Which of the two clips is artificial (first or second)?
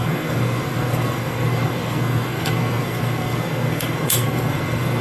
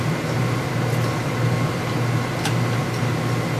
first